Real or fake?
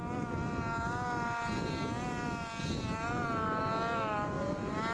real